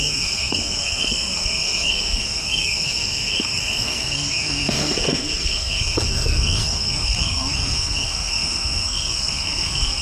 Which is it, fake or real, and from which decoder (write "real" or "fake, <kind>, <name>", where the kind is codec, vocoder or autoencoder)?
fake, codec, SNAC